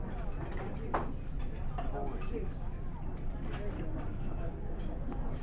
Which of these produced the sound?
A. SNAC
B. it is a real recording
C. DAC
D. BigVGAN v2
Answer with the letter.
B